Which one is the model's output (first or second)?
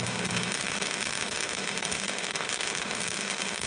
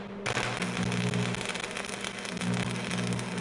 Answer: first